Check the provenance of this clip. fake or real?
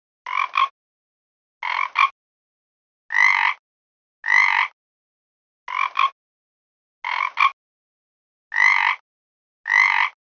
real